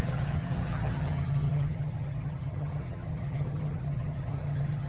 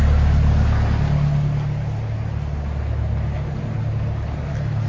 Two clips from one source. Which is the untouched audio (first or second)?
second